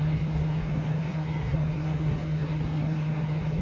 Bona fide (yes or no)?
no